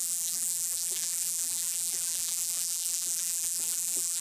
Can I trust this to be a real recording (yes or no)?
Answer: no